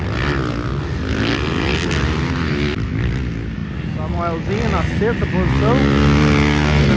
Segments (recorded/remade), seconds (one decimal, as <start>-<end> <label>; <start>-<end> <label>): 0.0-7.0 recorded